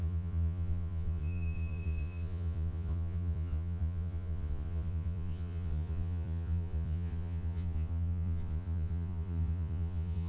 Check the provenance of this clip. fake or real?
fake